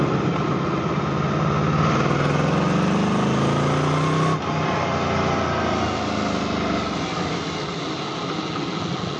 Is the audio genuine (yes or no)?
yes